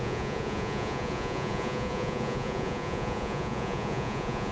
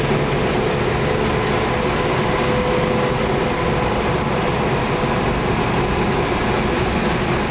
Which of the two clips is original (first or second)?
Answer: second